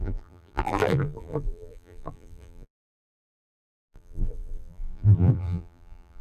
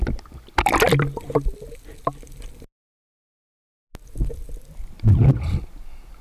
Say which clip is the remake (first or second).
first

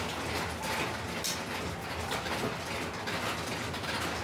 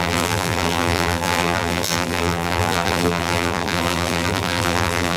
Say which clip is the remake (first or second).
second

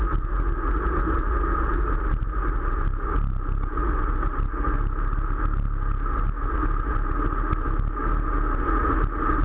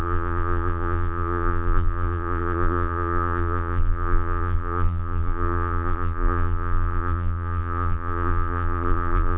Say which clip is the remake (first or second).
second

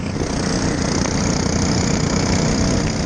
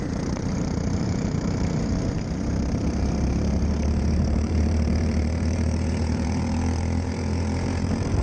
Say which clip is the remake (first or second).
second